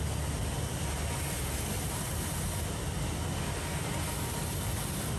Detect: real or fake real